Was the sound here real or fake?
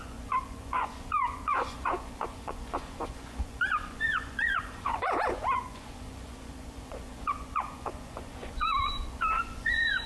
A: fake